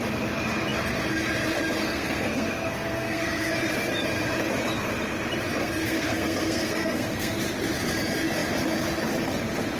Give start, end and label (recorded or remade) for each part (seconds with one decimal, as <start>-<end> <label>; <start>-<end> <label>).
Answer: 0.0-1.8 recorded; 1.8-3.5 remade; 3.5-5.6 recorded; 5.6-7.4 remade; 7.4-9.8 recorded